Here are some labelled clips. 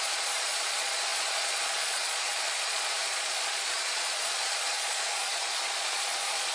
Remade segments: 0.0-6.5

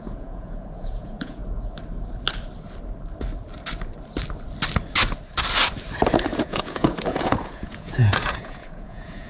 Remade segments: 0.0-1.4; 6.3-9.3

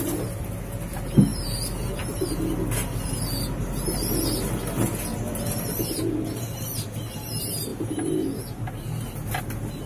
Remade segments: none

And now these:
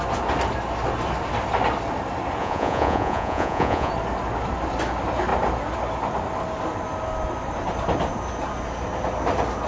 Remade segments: 2.4-3.9

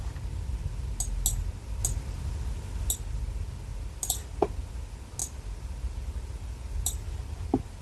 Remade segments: none

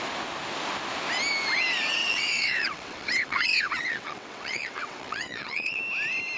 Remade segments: 2.0-5.8

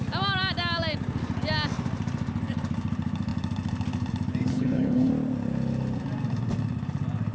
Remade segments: 4.5-5.1

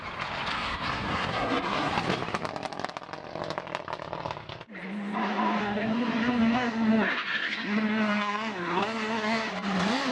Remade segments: 0.5-1.9; 5.6-9.5